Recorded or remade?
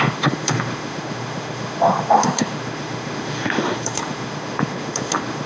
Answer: remade